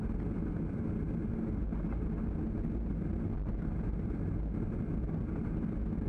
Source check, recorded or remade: recorded